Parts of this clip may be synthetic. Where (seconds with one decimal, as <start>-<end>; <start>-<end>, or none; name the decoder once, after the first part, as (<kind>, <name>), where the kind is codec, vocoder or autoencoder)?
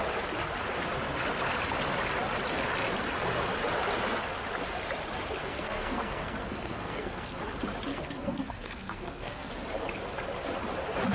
5.4-7.4 (codec, SNAC); 7.9-9.5